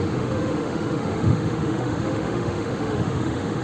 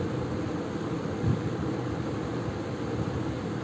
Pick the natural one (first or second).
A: second